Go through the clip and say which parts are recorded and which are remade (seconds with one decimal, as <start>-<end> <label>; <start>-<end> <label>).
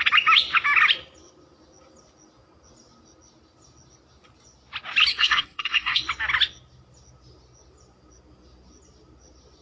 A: 0.0-5.1 recorded; 5.1-6.0 remade; 6.0-9.6 recorded